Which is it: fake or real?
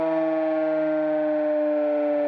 real